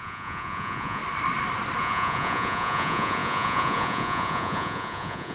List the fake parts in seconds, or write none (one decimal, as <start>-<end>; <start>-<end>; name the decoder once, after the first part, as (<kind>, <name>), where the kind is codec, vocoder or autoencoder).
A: 0.0-1.0 (vocoder, Vocos); 1.8-5.3